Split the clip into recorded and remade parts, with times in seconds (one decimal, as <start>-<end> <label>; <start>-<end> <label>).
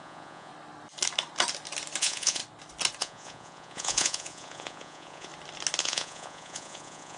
0.0-0.5 remade; 0.5-2.0 recorded; 2.0-2.4 remade; 2.4-3.0 recorded; 3.0-5.3 remade; 5.3-5.8 recorded; 5.8-7.2 remade